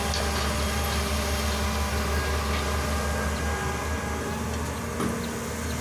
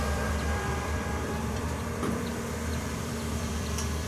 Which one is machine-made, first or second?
second